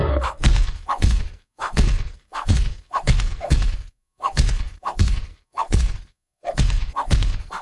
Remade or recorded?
remade